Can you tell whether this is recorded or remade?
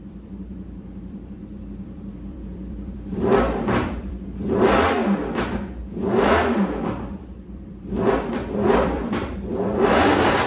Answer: remade